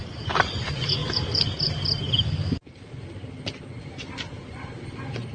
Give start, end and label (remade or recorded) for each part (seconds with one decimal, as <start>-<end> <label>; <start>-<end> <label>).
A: 0.0-0.6 remade; 0.6-1.0 recorded; 1.0-2.2 remade; 2.2-5.3 recorded